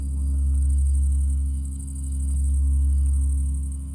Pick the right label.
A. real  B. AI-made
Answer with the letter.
A